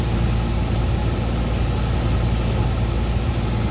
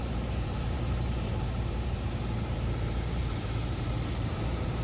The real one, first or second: first